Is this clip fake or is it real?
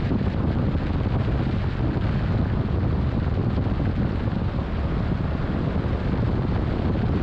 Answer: real